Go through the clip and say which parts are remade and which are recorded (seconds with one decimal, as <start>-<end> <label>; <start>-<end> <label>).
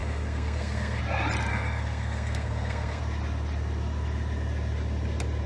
0.0-1.0 remade; 1.0-1.5 recorded; 1.5-3.0 remade; 3.0-5.5 recorded